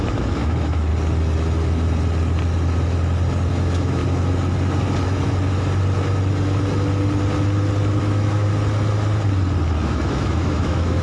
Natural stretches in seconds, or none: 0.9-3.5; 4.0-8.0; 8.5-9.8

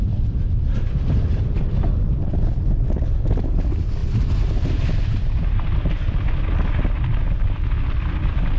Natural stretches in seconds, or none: 0.0-8.6